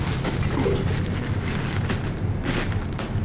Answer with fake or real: real